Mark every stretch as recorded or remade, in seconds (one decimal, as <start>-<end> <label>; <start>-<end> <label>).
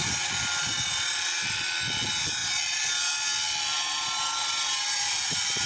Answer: 0.0-5.7 recorded